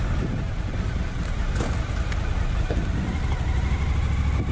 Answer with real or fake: real